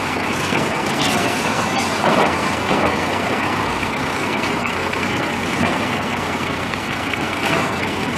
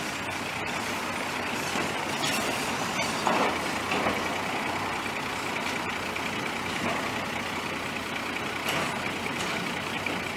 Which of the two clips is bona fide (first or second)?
second